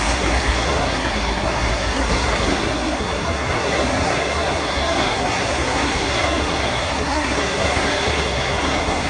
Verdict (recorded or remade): remade